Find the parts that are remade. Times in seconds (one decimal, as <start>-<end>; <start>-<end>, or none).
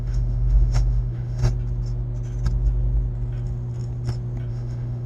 0.0-1.4; 4.5-5.1